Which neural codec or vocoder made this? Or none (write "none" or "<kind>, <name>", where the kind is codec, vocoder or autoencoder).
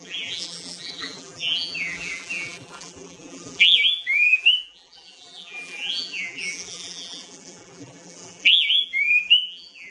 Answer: vocoder, BigVGAN v2